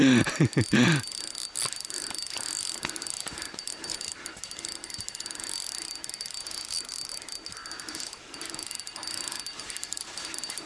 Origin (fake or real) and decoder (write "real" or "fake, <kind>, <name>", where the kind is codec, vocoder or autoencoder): real